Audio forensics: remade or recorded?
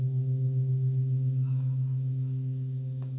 remade